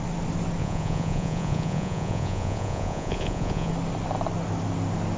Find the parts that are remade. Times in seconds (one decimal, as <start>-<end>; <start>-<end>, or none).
0.6-3.7